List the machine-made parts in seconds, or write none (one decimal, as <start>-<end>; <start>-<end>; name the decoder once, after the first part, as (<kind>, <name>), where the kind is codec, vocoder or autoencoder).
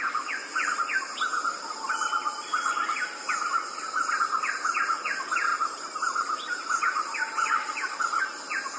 none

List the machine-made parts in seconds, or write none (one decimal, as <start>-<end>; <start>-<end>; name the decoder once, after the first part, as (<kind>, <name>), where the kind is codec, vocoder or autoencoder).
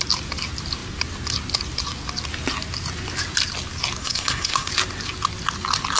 4.0-4.7 (codec, SNAC)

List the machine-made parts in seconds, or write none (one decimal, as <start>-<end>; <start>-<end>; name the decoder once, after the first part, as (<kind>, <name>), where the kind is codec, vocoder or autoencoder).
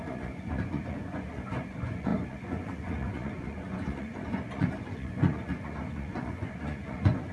0.0-7.3 (vocoder, Vocos)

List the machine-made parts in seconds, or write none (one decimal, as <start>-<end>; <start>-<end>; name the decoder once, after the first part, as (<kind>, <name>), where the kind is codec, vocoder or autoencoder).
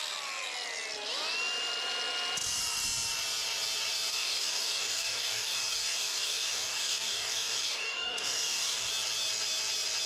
4.1-8.9 (codec, DAC)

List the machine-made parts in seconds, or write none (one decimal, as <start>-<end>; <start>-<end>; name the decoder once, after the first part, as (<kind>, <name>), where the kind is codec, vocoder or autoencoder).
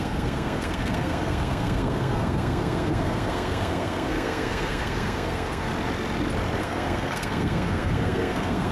0.0-5.7 (codec, SNAC); 6.6-8.7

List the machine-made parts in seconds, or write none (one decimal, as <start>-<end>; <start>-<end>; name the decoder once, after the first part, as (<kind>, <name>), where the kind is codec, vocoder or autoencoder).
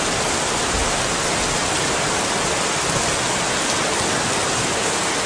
none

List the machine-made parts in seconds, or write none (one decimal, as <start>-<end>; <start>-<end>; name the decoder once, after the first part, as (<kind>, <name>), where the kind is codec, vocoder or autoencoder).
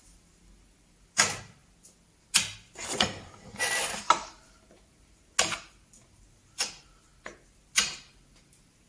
none